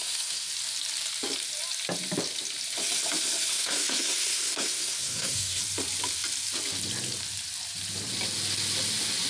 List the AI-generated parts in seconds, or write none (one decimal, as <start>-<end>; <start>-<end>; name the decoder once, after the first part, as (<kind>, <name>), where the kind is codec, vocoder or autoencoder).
0.0-0.5 (codec, SNAC); 3.5-5.6